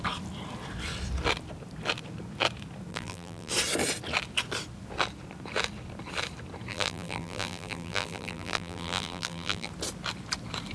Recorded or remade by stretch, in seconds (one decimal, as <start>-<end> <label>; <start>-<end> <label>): 0.0-2.9 recorded; 2.9-3.5 remade; 3.5-6.7 recorded; 6.7-9.7 remade; 9.7-10.7 recorded